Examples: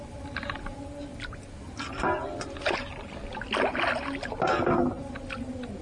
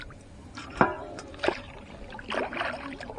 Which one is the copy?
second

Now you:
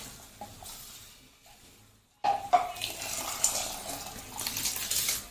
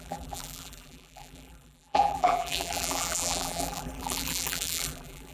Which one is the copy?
second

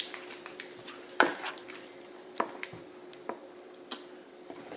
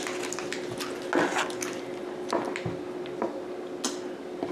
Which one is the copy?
first